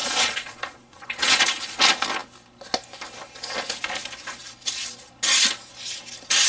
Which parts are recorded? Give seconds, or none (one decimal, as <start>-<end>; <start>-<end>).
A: 1.8-6.5